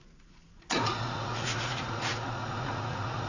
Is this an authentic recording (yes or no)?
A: no